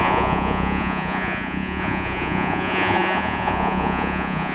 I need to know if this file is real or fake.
fake